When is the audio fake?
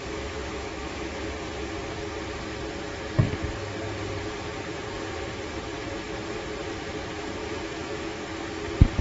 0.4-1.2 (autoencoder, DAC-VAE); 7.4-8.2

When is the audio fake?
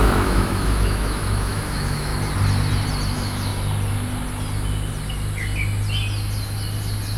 0.0-2.1 (autoencoder, DAC-VAE); 3.1-3.5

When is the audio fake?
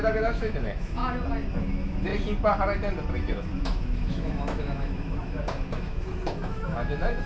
0.0-1.0 (autoencoder, DAC-VAE); 1.6-2.1; 3.1-7.3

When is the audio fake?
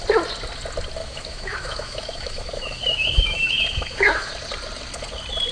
1.0-4.3 (autoencoder, DAC-VAE)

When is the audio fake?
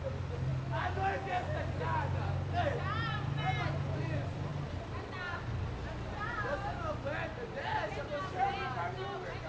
none